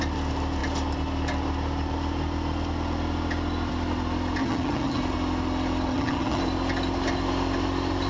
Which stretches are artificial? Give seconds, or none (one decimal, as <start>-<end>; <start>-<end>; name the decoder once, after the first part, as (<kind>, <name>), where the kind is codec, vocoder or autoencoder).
4.4-5.0 (vocoder, HiFi-GAN); 5.9-6.4